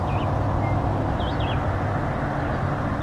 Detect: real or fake real